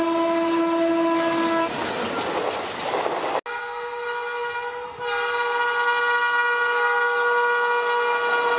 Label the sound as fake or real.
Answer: real